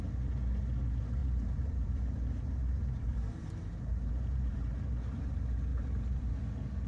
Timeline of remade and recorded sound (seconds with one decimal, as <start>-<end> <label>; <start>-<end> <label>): 0.0-1.2 recorded; 1.2-5.3 remade; 5.3-5.7 recorded; 5.7-6.3 remade; 6.3-6.9 recorded